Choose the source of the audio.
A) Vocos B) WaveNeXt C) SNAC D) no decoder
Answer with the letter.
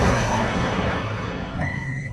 C